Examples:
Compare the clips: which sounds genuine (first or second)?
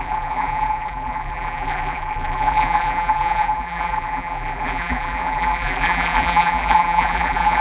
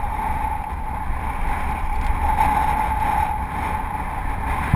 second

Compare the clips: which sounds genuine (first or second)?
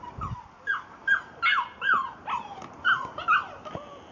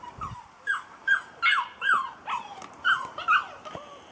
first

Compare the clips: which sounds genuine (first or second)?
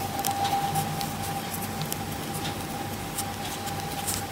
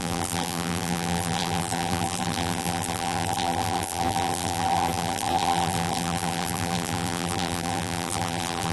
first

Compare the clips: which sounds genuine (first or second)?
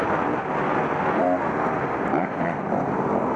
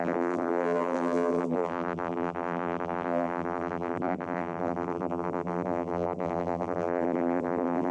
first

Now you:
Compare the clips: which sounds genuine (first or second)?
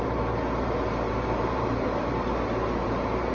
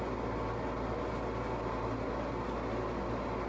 second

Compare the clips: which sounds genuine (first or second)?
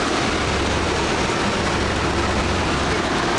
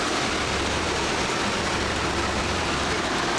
first